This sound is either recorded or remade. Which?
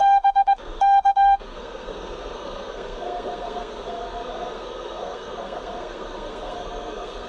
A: remade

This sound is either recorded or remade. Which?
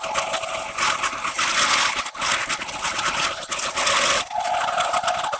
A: recorded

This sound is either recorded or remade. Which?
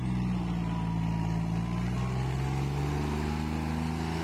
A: recorded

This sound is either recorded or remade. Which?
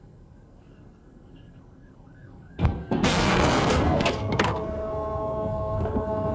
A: remade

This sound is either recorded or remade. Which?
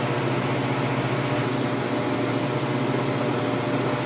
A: recorded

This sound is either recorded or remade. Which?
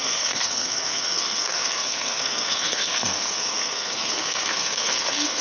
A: remade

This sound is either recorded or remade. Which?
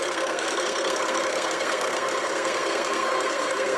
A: remade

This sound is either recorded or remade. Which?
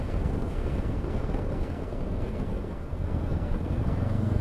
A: remade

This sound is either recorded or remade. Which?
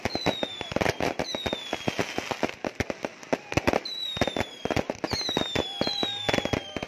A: recorded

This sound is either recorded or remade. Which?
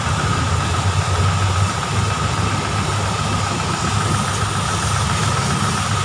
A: recorded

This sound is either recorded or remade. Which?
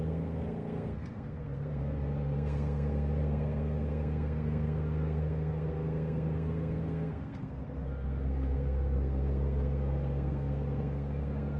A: remade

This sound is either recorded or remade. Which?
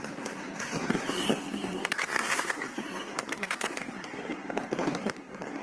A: remade